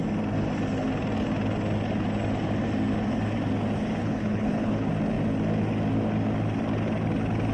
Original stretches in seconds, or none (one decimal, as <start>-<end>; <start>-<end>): 0.0-4.0; 4.9-7.5